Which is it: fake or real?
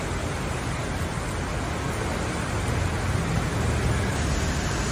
real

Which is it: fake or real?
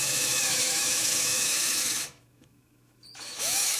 fake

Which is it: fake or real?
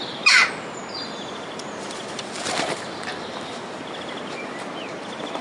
fake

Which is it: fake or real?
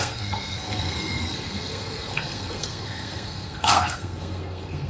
fake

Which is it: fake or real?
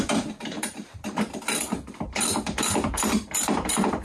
fake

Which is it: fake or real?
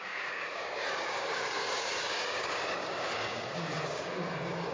fake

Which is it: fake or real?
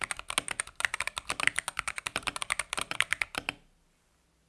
real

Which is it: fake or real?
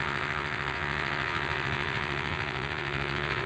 fake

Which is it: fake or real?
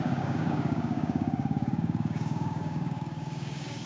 fake